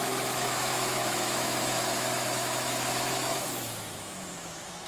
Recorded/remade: remade